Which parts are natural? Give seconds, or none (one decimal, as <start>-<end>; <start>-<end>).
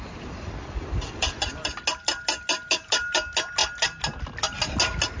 0.0-5.2